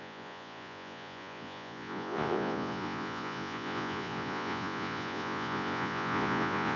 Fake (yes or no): yes